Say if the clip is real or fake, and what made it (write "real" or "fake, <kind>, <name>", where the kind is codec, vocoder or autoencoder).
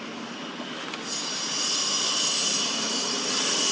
real